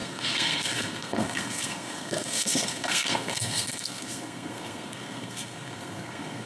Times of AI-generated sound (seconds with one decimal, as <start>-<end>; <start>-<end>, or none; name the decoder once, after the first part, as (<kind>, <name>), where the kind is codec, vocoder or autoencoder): 0.0-6.5 (codec, SNAC)